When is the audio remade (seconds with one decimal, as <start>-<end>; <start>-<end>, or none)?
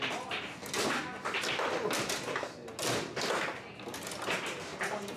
none